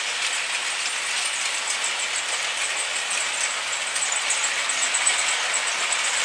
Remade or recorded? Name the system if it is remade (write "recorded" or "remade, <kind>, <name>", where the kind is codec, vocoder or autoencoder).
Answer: recorded